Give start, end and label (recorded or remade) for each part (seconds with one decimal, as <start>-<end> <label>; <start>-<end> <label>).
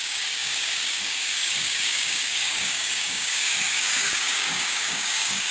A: 0.0-5.5 remade